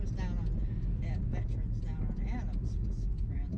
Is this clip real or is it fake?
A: real